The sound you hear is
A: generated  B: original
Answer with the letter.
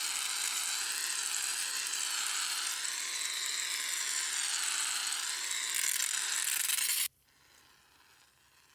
B